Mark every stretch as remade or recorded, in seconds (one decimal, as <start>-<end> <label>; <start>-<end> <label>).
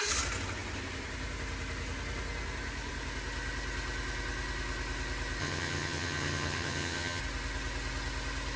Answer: 0.0-5.4 recorded; 5.4-7.2 remade; 7.2-8.6 recorded